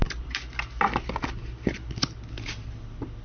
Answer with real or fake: real